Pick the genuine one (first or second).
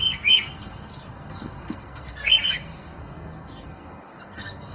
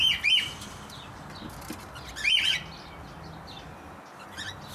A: second